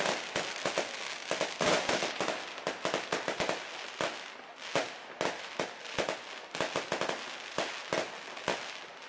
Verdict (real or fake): real